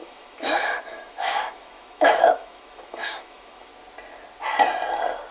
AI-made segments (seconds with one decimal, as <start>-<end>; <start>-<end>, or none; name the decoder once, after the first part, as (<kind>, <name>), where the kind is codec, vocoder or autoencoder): 0.0-3.7 (autoencoder, DAC-VAE)